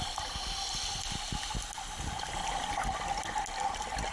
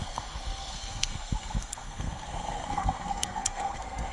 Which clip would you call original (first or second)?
first